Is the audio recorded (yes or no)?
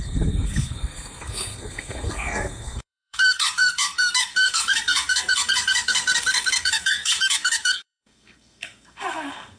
no